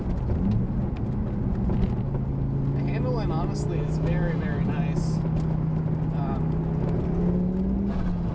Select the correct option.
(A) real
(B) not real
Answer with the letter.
A